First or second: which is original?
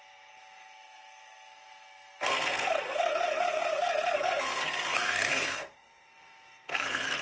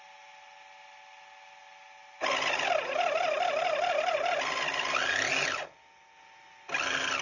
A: second